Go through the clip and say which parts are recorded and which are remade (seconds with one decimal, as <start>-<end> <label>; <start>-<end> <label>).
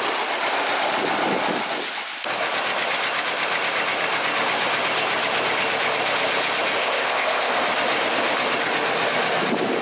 0.0-6.8 recorded; 6.8-7.5 remade; 7.5-9.8 recorded